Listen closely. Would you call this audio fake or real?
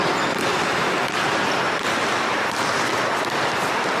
real